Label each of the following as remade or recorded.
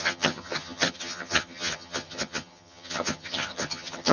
remade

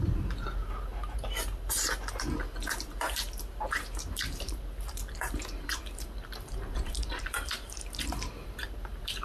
remade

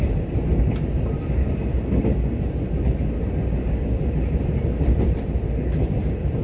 recorded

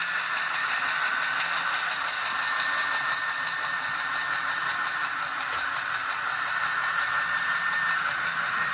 recorded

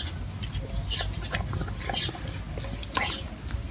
recorded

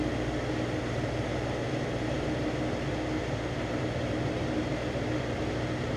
recorded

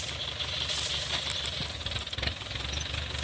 recorded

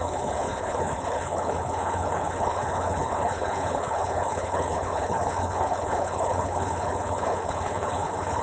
remade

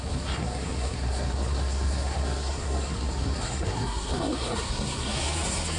remade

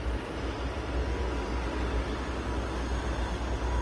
recorded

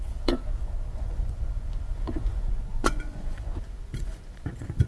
remade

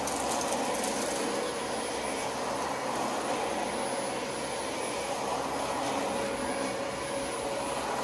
recorded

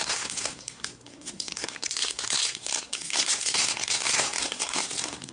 remade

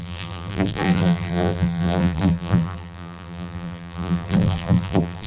remade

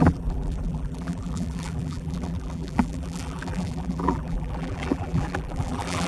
remade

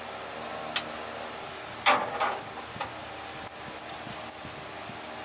recorded